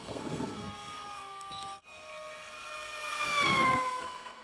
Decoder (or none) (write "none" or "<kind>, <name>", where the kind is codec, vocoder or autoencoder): codec, SNAC